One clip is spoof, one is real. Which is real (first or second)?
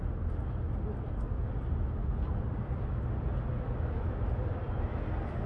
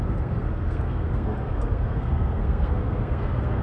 first